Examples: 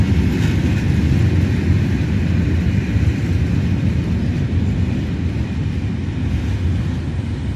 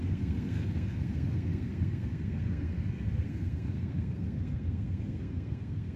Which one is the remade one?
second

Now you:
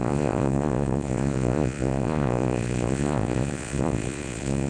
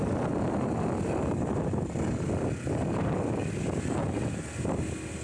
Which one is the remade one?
first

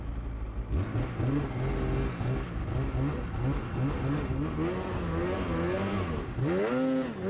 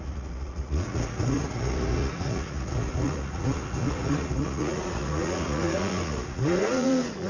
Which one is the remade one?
second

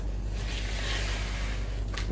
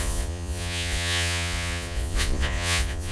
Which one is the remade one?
second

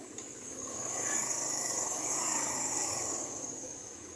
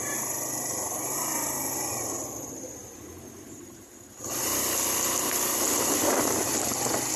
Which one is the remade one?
first